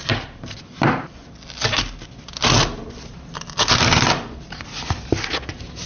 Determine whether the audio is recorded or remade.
recorded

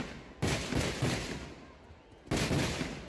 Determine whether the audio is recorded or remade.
recorded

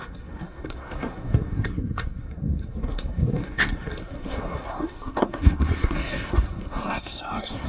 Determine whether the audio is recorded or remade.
remade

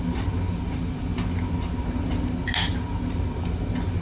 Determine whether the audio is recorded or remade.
recorded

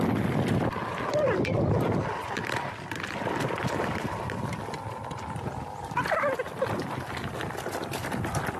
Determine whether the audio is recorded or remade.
recorded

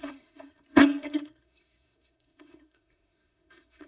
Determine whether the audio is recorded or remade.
remade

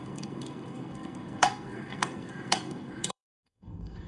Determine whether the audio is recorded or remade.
remade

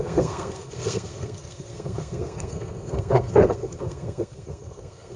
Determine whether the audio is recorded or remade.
remade